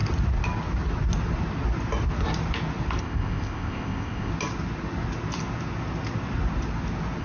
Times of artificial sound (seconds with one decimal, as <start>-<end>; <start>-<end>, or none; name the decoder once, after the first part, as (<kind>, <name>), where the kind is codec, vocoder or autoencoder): 3.0-4.3 (codec, ZipCodec)